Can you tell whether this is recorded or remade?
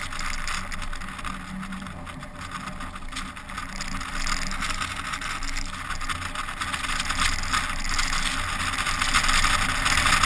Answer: recorded